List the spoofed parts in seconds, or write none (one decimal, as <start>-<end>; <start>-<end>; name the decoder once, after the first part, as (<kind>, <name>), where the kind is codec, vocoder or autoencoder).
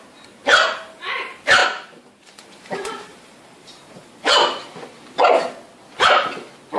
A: 3.1-4.4 (vocoder, BigVGAN v2)